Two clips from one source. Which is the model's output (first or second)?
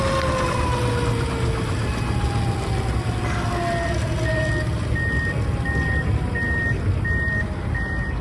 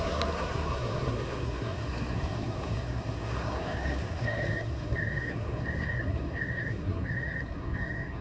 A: second